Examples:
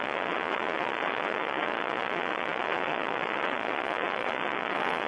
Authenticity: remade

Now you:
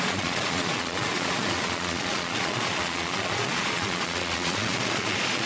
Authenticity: remade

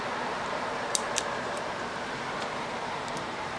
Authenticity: remade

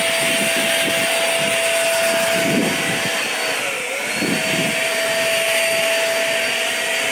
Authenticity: recorded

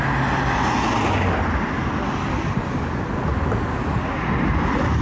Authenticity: recorded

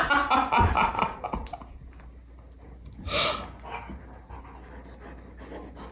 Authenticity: recorded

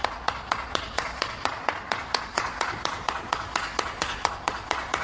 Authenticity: remade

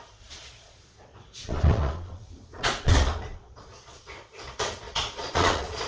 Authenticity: remade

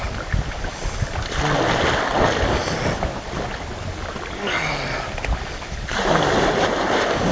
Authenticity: recorded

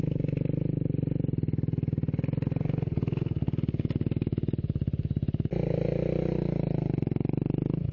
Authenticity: recorded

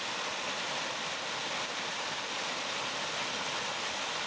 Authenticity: recorded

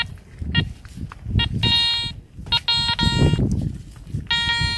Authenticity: recorded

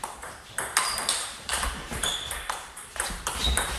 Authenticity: remade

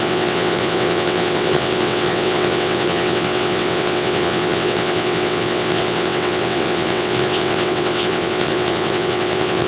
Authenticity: remade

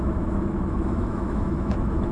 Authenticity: remade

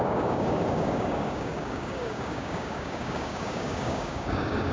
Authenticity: remade